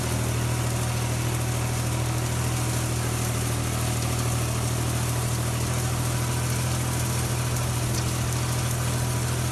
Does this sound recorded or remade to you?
recorded